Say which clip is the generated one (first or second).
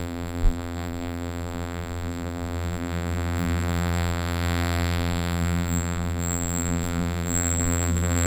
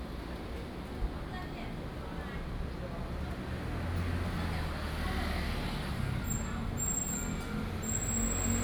first